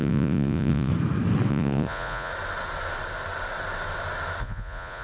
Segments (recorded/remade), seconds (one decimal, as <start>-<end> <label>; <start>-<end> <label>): 0.0-0.9 remade; 0.9-1.5 recorded; 1.5-2.3 remade; 2.3-4.4 recorded; 4.4-5.0 remade

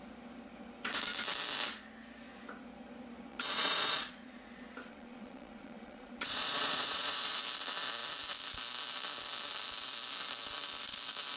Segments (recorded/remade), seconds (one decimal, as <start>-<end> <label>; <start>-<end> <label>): 0.0-3.3 recorded; 3.3-7.4 remade; 7.4-11.4 recorded

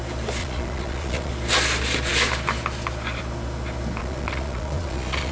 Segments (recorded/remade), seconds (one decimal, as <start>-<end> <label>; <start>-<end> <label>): 0.0-0.4 recorded; 0.4-1.3 remade; 1.3-4.0 recorded; 4.0-5.3 remade

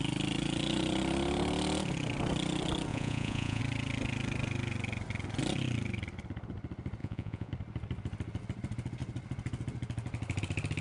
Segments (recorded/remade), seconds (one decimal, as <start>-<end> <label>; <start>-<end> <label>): 0.0-2.9 recorded; 2.9-3.6 remade; 3.6-7.0 recorded; 7.0-7.5 remade; 7.5-10.8 recorded

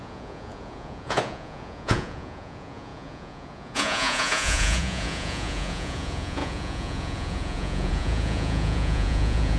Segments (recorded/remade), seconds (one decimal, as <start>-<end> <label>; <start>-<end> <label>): 0.0-9.6 remade